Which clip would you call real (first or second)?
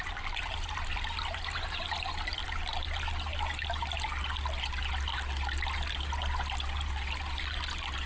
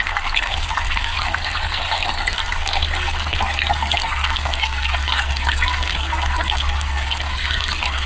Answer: first